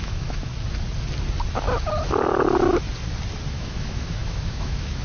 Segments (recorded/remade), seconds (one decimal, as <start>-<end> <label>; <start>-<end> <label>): 0.0-0.5 remade; 0.5-3.5 recorded; 3.5-5.0 remade